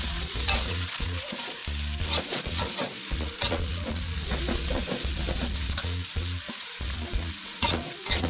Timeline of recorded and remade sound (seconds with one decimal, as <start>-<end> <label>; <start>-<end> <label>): 0.0-1.6 remade; 1.6-2.2 recorded; 2.2-8.3 remade